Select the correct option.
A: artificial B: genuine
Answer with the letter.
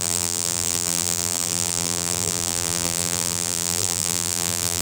A